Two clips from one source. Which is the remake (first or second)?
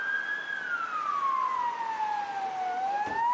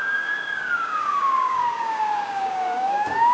second